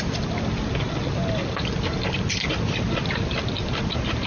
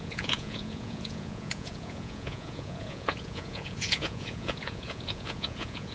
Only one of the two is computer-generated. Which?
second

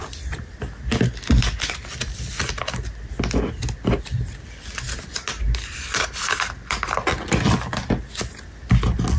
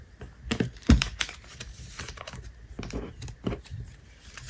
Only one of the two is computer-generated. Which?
second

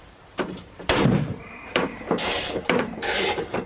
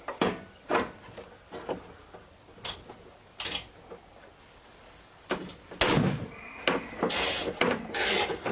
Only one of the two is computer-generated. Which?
first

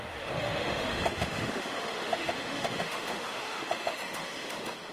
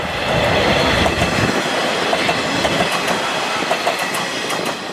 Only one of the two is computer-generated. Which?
first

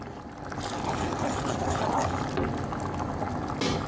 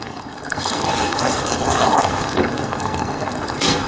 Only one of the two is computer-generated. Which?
second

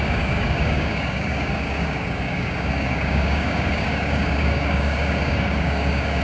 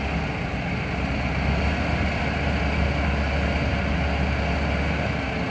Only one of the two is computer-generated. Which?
first